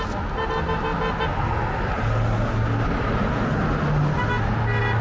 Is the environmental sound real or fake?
real